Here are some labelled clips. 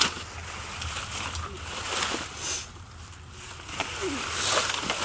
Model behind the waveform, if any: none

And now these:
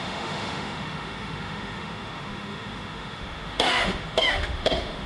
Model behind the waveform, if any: autoencoder, DAC-VAE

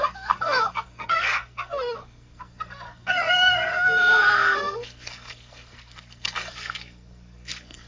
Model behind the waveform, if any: codec, SNAC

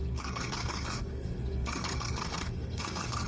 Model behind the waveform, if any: codec, SNAC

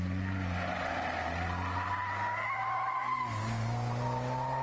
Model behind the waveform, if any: none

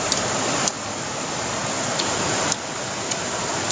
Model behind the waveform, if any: none